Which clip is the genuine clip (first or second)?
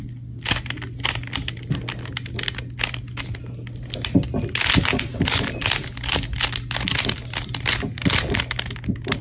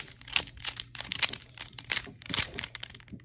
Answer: first